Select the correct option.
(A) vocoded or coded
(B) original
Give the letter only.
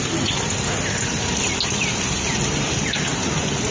B